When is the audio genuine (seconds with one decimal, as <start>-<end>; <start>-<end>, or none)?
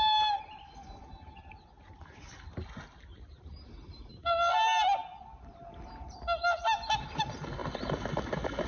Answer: 0.0-8.7